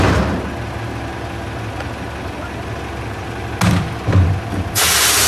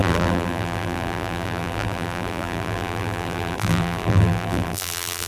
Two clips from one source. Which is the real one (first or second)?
first